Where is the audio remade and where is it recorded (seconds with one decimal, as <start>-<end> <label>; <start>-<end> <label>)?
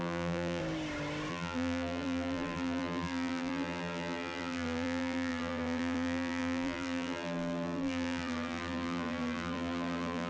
0.0-0.6 remade; 0.6-1.3 recorded; 1.3-10.3 remade